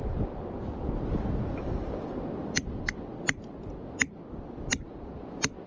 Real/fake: real